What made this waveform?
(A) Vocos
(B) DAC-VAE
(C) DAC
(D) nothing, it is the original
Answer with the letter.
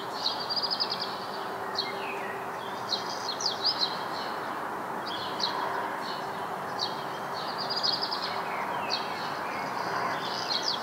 D